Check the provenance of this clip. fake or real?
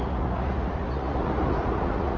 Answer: fake